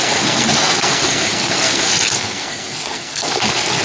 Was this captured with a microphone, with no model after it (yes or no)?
no